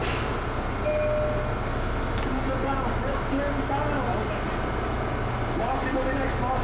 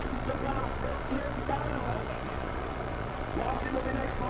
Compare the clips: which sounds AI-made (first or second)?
second